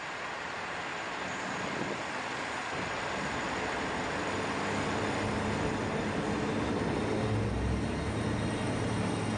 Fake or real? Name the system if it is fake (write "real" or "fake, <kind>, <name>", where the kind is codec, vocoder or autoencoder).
real